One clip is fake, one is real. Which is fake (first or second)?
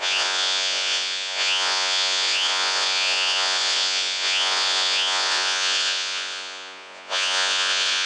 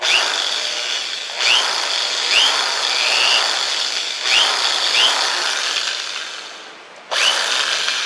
first